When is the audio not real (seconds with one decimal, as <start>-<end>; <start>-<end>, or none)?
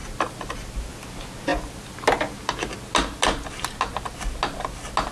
none